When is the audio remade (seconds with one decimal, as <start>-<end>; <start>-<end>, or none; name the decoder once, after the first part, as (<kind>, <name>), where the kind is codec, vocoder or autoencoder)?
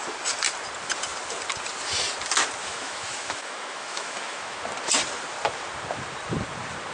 2.6-4.6 (autoencoder, DAC-VAE)